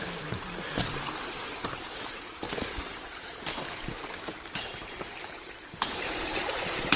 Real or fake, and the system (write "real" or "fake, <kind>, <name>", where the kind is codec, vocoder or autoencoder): fake, vocoder, BigVGAN v2